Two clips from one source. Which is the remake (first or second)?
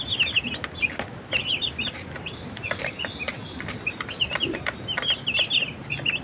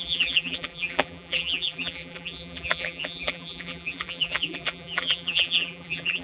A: second